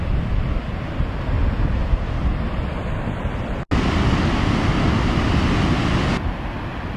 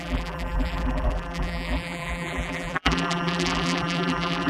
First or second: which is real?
first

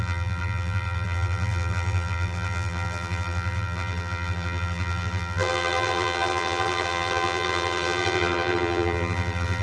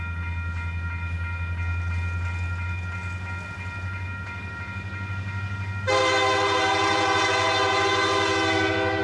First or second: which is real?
second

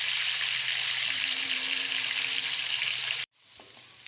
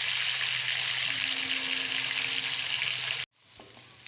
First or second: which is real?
second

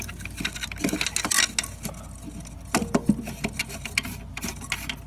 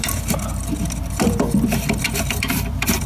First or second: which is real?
first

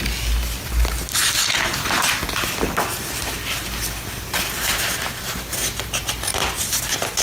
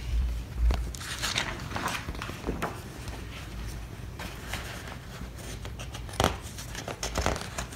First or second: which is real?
first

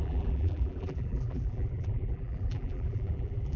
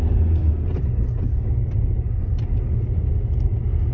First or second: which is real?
second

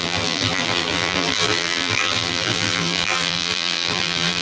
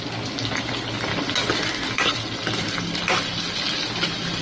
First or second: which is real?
second